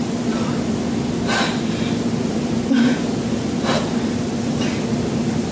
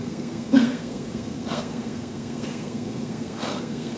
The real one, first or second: first